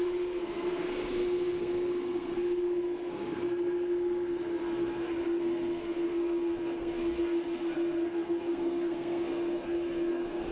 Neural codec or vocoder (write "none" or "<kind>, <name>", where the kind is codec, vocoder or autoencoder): codec, SNAC